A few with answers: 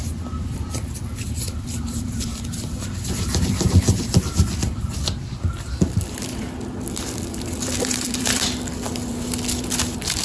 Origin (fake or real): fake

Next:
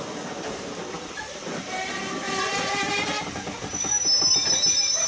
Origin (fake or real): real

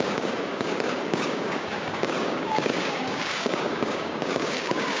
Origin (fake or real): fake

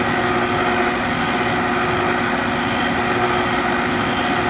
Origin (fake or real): real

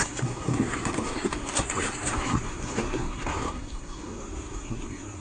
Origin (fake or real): fake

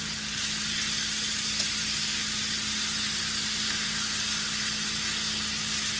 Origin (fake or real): real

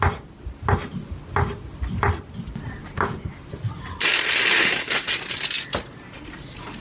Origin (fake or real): real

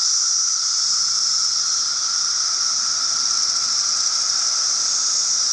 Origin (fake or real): real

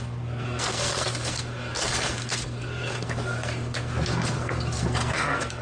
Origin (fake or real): fake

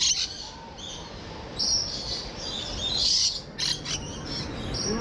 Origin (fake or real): real